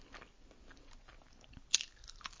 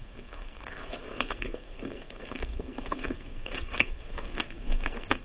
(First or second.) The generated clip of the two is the second